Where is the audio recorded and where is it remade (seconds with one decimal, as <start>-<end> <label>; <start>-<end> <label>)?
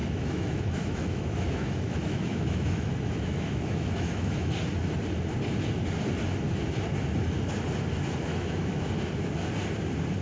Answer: 0.0-4.5 remade; 4.5-8.3 recorded; 8.3-8.9 remade; 8.9-10.2 recorded